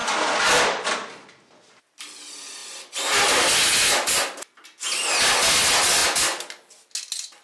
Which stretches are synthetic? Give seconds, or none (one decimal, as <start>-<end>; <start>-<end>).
none